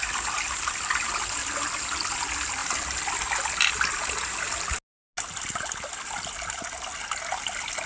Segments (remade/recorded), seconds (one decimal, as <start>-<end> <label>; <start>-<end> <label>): 0.0-7.9 recorded